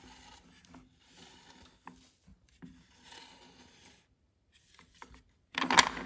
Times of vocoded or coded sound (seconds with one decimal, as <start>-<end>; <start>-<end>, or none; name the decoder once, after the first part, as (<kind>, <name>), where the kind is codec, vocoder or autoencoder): 2.3-5.6 (vocoder, BigVGAN v2)